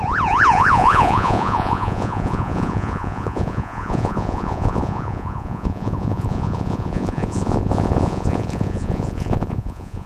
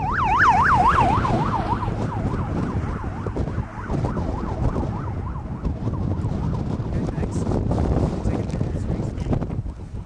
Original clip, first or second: second